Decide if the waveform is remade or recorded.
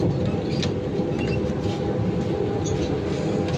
recorded